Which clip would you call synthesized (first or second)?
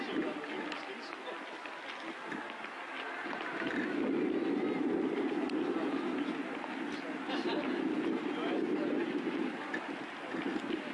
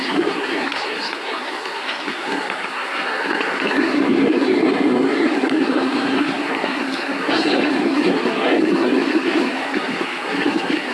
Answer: second